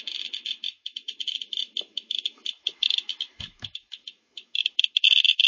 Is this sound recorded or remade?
remade